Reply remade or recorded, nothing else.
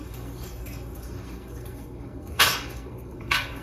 remade